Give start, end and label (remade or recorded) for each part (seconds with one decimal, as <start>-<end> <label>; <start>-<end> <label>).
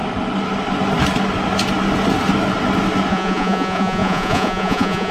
0.0-3.1 recorded; 3.1-5.1 remade